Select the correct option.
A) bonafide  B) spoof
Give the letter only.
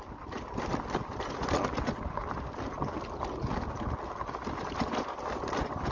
A